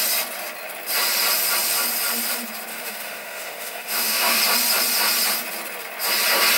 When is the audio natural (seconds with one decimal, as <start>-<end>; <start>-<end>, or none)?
0.0-2.7; 4.4-6.6